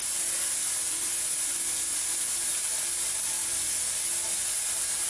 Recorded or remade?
recorded